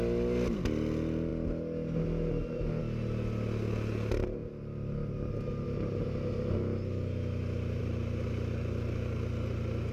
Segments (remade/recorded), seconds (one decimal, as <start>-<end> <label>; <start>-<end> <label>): 0.0-9.9 recorded